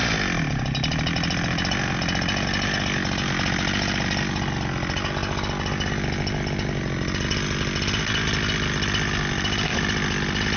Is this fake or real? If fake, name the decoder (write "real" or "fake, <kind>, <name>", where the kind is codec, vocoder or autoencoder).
real